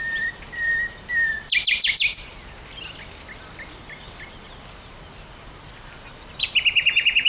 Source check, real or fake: real